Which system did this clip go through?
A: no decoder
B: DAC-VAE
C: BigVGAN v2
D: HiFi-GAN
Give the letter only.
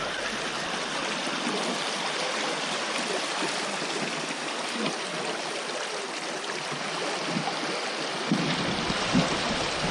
A